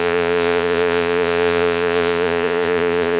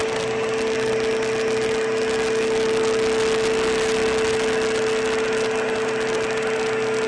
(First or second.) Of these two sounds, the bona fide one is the second